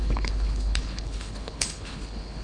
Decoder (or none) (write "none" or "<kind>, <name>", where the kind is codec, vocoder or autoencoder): codec, HILCodec